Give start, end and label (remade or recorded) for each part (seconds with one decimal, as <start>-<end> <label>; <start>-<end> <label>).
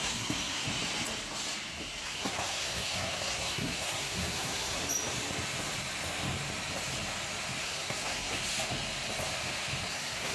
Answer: 0.0-0.7 remade; 0.7-2.0 recorded; 2.0-4.8 remade; 4.8-7.6 recorded; 7.6-8.4 remade; 8.4-9.9 recorded; 9.9-10.3 remade